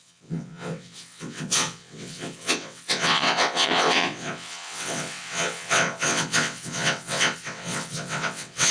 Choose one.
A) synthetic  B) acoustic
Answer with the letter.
A